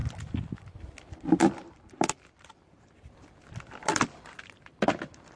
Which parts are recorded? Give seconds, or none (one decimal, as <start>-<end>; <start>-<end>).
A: none